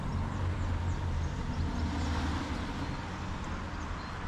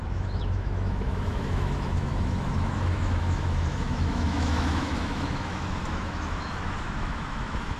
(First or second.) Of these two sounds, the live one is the first